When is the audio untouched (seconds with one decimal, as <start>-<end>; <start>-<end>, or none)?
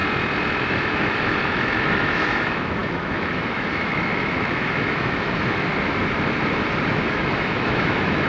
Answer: 0.0-0.6; 5.7-6.9